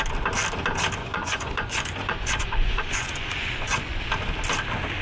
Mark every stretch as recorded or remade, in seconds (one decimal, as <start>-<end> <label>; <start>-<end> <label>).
0.0-1.0 recorded; 1.0-4.0 remade; 4.0-5.0 recorded